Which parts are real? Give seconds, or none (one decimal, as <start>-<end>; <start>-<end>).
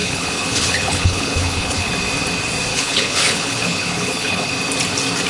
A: 1.9-2.7; 4.5-5.3